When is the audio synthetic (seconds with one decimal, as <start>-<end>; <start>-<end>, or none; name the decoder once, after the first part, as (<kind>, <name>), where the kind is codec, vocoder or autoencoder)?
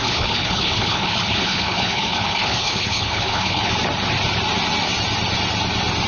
0.0-3.7 (codec, HILCodec)